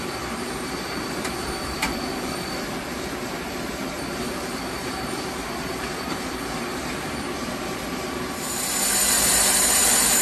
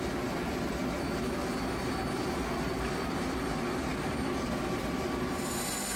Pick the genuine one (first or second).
second